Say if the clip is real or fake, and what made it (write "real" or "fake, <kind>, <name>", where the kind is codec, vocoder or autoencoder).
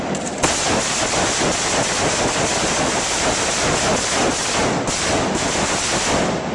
real